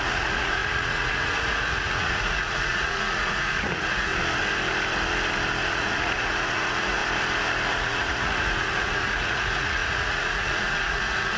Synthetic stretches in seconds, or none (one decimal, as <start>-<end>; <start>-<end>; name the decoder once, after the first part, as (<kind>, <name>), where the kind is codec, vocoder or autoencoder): 0.0-4.1 (vocoder, Vocos); 5.7-7.0; 7.7-11.4